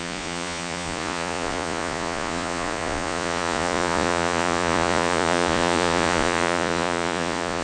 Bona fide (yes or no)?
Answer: no